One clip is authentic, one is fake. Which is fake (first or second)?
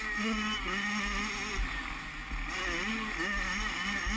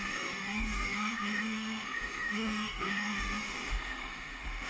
second